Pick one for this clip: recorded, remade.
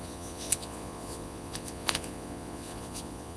remade